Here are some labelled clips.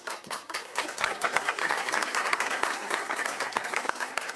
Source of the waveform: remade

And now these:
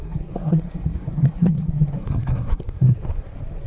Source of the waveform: remade